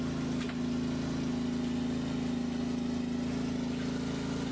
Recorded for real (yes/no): yes